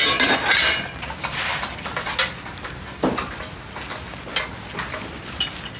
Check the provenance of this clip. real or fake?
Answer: real